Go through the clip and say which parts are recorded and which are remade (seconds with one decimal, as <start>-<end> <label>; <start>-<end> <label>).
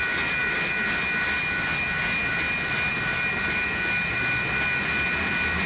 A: 0.0-5.7 recorded